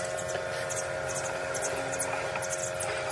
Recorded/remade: recorded